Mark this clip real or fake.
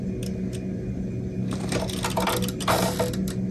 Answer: real